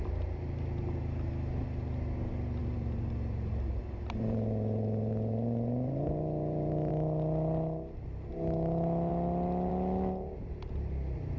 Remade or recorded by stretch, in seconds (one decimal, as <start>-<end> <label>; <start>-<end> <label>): 0.0-2.6 recorded; 2.6-6.9 remade; 6.9-11.4 recorded